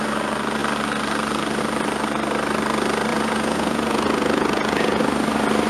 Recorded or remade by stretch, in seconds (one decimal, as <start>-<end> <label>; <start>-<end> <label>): 0.0-3.1 recorded; 3.1-5.0 remade; 5.0-5.7 recorded